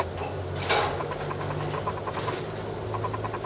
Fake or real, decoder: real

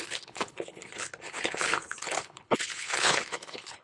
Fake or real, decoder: fake, codec, HILCodec